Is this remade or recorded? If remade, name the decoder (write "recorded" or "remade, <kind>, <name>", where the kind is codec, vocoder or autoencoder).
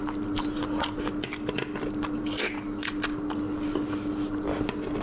recorded